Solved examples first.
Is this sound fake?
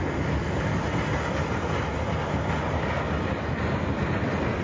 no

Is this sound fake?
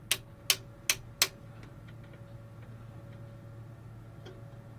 no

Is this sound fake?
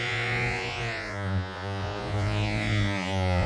yes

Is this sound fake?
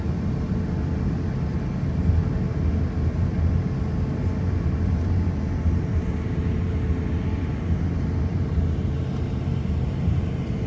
no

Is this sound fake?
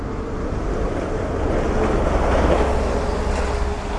no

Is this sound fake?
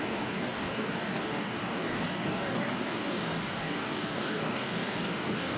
yes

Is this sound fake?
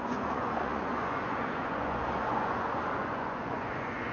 yes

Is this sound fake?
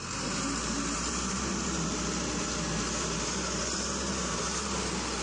yes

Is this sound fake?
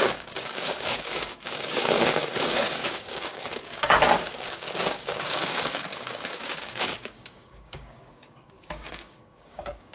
yes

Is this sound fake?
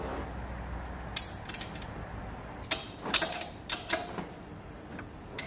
no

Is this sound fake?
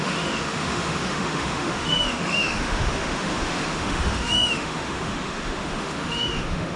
yes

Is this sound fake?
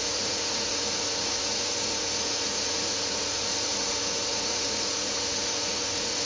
yes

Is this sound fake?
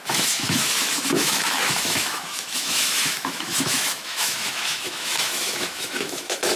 yes